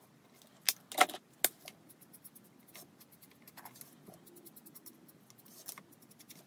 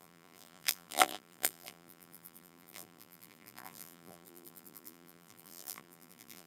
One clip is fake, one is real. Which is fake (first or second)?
second